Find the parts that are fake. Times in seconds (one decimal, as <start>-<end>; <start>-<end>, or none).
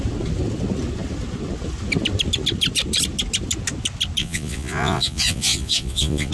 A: 4.2-6.3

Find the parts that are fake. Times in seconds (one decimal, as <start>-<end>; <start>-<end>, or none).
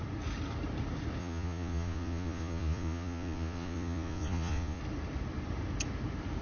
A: 1.2-4.8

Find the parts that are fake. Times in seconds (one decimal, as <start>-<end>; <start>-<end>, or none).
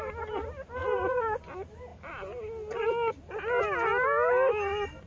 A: 0.8-1.4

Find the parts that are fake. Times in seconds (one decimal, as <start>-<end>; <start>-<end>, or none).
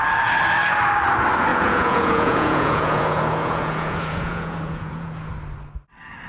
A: 1.5-5.3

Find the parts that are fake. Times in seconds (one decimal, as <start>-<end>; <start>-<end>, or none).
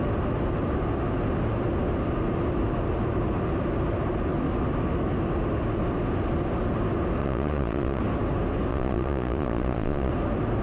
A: 7.2-8.0; 8.7-10.1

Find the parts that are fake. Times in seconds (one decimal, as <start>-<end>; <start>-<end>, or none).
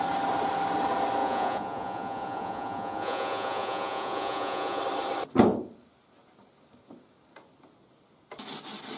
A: 1.2-4.8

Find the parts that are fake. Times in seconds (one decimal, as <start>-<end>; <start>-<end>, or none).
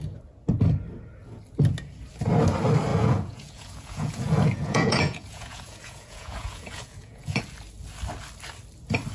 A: 2.9-7.4